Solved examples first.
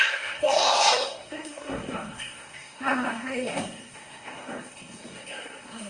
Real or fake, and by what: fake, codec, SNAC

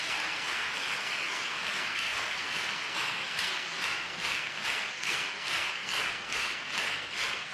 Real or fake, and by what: fake, codec, SNAC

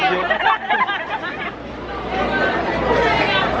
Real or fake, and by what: real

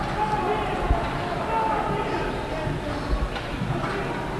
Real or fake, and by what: real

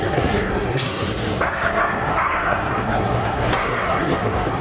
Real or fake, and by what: fake, codec, SNAC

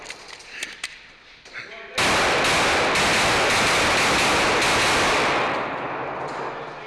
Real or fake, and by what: real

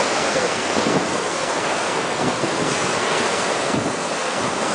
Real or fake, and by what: fake, codec, SNAC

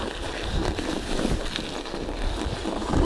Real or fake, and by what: real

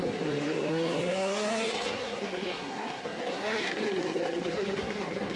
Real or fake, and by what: fake, codec, SNAC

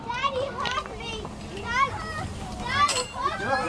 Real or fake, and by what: real